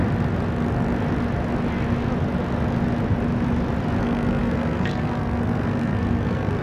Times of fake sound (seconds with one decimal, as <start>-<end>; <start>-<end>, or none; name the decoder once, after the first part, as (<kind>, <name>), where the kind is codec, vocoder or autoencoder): 4.0-6.6 (codec, SNAC)